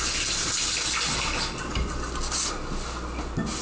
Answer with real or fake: real